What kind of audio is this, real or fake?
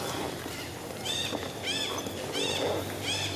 real